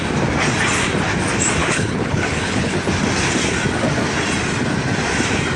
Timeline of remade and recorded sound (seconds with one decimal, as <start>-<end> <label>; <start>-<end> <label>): 0.0-1.6 recorded; 1.6-2.8 remade; 2.8-5.6 recorded